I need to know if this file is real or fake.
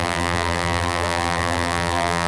fake